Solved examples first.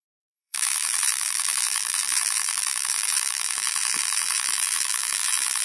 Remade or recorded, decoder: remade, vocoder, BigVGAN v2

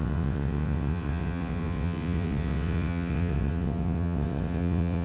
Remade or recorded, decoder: remade, vocoder, WaveNeXt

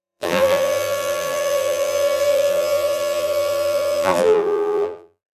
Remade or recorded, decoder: remade, vocoder, BigVGAN v2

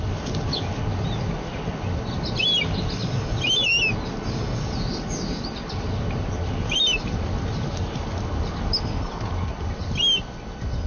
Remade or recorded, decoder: recorded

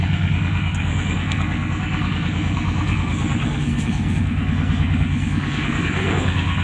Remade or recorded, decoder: remade, codec, SNAC